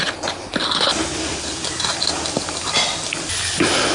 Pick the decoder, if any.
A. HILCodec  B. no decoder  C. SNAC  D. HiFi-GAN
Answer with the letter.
B